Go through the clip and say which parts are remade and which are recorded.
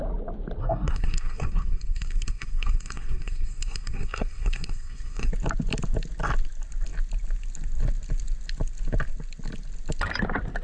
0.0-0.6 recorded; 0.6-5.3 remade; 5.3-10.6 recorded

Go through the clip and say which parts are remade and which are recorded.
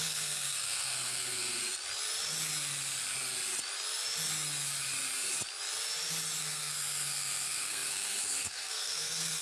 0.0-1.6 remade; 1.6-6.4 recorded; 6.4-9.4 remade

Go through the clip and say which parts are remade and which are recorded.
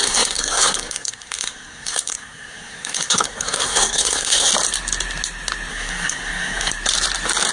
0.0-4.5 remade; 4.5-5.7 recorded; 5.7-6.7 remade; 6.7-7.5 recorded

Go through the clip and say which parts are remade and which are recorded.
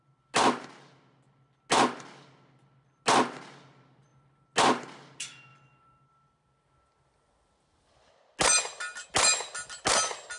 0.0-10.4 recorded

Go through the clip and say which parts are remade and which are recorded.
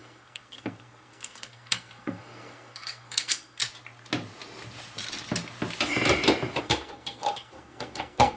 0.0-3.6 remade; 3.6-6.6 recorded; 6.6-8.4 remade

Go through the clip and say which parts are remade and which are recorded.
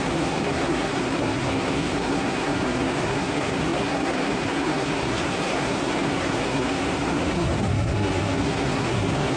0.0-9.4 remade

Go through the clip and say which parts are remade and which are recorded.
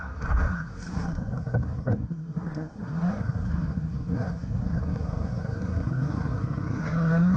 0.0-7.4 remade